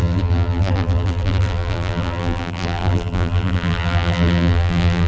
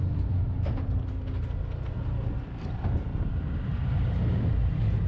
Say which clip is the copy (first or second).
first